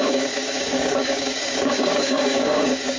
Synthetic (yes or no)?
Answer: yes